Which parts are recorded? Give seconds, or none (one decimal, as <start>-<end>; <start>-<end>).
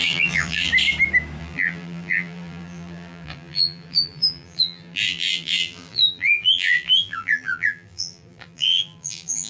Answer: 0.7-1.4